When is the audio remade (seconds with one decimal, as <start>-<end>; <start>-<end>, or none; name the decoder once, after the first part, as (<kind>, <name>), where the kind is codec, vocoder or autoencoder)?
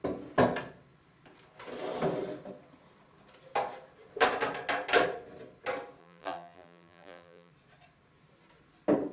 6.0-7.5 (vocoder, BigVGAN v2)